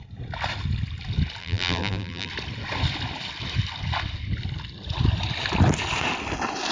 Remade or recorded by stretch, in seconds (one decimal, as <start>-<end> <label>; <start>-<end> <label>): 0.0-1.4 recorded; 1.4-2.3 remade; 2.3-6.7 recorded